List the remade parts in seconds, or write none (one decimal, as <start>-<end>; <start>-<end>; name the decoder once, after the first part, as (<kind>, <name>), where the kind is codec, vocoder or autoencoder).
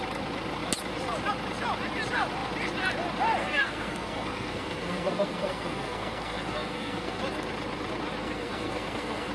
3.4-7.2 (codec, SNAC); 8.2-9.3